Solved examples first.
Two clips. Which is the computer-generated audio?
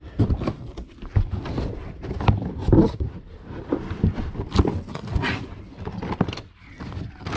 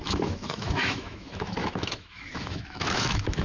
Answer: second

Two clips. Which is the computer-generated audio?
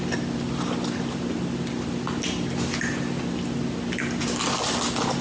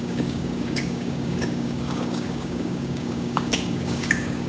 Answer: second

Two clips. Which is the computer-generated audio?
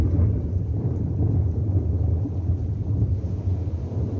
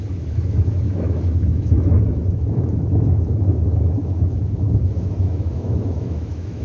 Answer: second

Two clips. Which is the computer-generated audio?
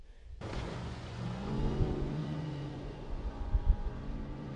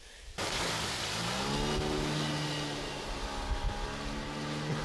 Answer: first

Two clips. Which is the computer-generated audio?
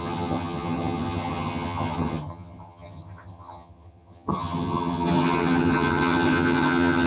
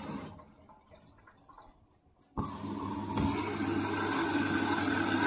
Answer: first